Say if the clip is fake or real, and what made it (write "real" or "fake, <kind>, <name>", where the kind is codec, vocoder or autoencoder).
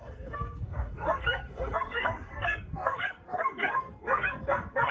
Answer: fake, codec, SNAC